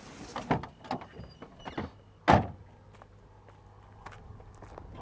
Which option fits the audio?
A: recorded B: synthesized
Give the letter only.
A